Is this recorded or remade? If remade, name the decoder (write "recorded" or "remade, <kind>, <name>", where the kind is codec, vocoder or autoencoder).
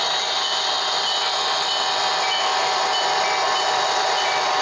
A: remade, vocoder, BigVGAN v2